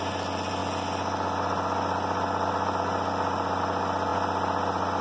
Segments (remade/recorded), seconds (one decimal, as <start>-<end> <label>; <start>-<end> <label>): 0.0-5.0 recorded